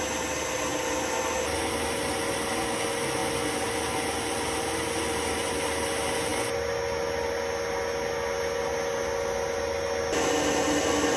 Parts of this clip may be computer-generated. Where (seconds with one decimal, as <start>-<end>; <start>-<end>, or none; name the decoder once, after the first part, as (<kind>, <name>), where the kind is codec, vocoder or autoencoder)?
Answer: none